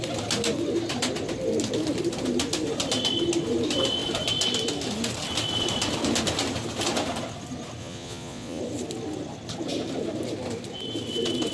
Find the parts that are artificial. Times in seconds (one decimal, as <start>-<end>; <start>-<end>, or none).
7.8-8.6